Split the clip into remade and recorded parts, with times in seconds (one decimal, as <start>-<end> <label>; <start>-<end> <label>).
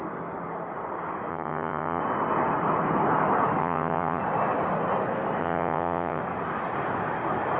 0.0-1.3 recorded; 1.3-2.0 remade; 2.0-3.6 recorded; 3.6-4.2 remade; 4.2-5.4 recorded; 5.4-6.2 remade; 6.2-7.6 recorded